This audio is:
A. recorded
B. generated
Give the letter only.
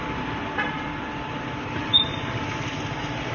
A